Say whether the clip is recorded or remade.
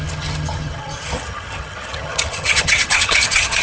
remade